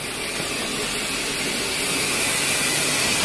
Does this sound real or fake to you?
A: real